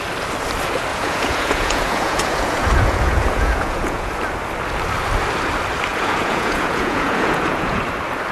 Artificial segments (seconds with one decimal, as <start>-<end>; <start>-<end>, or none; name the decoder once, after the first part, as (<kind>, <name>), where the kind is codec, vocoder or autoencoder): 0.9-4.1 (vocoder, Vocos); 5.9-7.8